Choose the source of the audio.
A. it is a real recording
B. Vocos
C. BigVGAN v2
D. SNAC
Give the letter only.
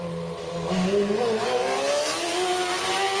A